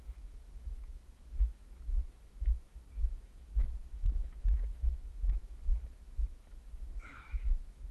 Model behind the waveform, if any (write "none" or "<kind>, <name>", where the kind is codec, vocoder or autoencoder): autoencoder, DAC-VAE